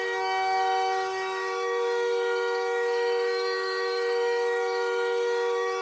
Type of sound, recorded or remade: remade